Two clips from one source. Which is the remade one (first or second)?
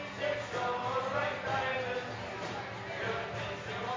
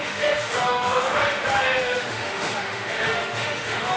second